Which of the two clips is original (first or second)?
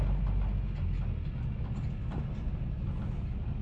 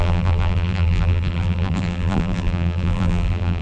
first